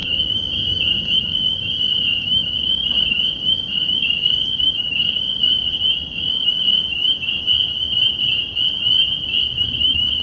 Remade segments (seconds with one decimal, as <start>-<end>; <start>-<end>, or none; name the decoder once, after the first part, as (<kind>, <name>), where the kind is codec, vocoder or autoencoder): 0.0-7.6 (codec, DAC); 9.4-10.2